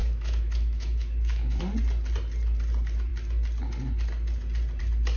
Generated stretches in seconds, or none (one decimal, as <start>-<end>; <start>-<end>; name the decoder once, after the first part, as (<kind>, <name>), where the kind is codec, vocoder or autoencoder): 0.0-1.6 (autoencoder, DAC-VAE)